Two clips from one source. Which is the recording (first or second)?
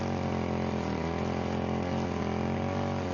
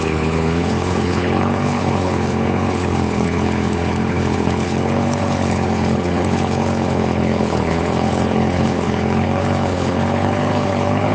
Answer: first